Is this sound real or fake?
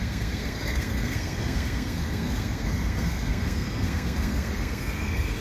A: fake